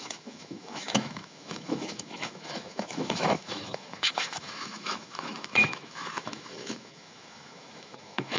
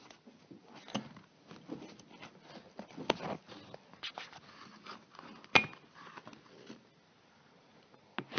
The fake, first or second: first